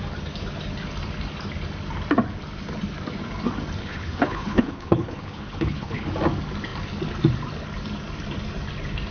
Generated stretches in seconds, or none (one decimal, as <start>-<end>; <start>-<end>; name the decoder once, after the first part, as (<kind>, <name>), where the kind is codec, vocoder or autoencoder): 3.8-6.1 (codec, HILCodec)